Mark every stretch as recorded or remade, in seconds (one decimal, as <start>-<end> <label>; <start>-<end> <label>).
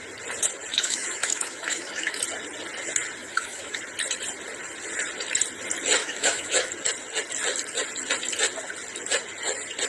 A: 0.0-0.7 recorded; 0.7-2.2 remade; 2.2-3.2 recorded; 3.2-3.8 remade; 3.8-6.0 recorded; 6.0-6.7 remade; 6.7-9.9 recorded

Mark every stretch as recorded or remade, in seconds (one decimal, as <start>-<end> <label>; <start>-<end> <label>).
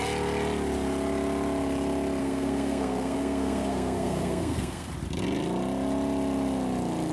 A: 0.0-2.2 recorded; 2.2-4.9 remade; 4.9-7.1 recorded